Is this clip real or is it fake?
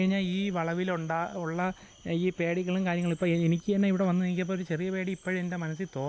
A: real